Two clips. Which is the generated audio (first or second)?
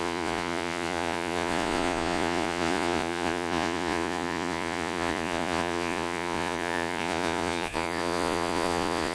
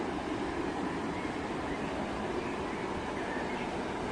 first